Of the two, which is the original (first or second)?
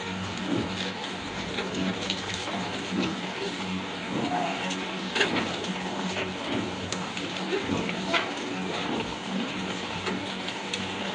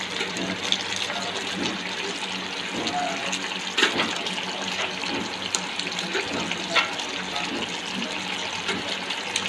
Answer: second